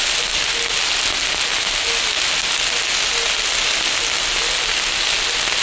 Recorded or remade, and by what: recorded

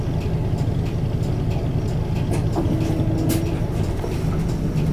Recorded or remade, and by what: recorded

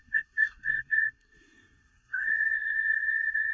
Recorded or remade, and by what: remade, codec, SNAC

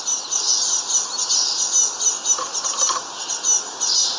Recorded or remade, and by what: recorded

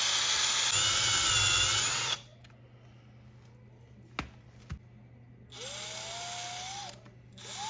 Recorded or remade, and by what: recorded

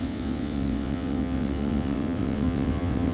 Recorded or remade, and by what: remade, vocoder, WaveNeXt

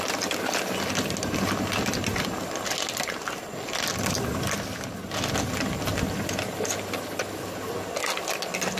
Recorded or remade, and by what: recorded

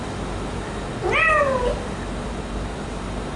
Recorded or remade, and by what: recorded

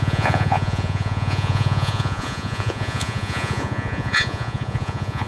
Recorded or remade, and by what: remade, vocoder, Vocos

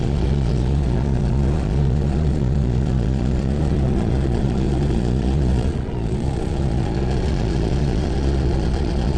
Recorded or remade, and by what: remade, vocoder, Vocos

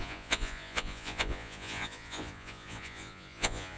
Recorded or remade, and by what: remade, vocoder, Vocos